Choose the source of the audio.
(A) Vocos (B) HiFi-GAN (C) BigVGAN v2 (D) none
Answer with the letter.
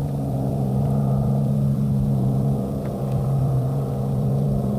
A